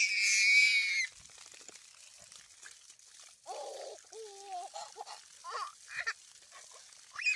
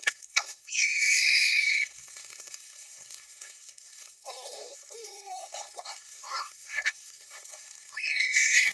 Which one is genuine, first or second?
first